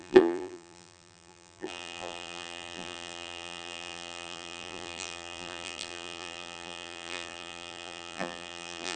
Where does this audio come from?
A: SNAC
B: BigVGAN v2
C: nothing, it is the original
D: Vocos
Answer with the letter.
B